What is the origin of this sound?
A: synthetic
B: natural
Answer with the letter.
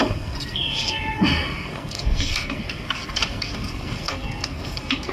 A